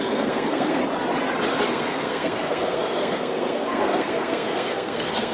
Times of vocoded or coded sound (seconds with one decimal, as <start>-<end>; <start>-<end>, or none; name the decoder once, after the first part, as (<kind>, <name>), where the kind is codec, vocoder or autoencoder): 0.0-0.8 (codec, SNAC); 1.7-5.3